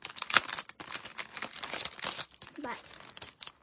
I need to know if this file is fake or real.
real